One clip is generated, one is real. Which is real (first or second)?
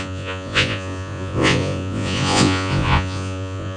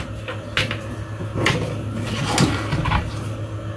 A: second